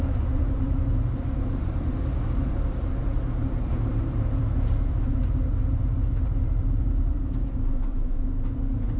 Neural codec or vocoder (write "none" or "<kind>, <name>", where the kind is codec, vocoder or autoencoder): vocoder, BigVGAN v2